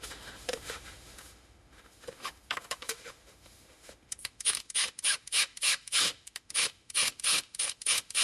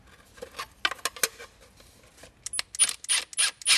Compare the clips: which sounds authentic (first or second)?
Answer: second